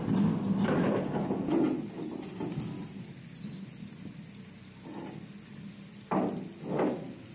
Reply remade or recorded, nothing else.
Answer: recorded